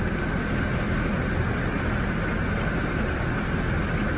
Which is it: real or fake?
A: real